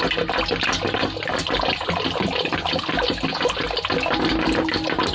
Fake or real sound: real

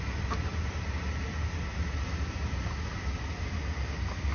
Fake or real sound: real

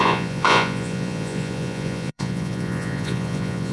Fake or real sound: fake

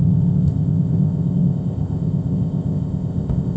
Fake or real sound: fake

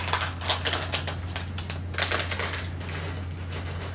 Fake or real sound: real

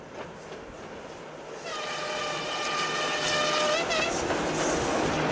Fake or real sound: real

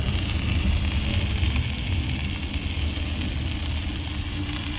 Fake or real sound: real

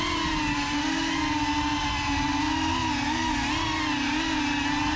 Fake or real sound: real